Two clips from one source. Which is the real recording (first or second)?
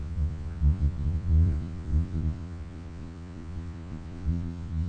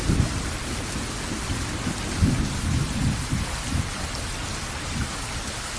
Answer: second